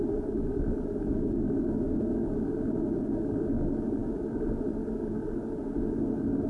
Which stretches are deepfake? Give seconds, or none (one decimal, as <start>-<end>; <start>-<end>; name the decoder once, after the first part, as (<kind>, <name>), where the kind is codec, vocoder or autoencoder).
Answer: 4.0-4.5 (vocoder, BigVGAN v2)